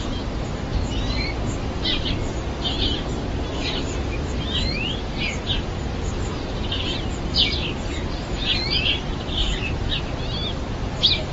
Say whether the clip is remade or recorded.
recorded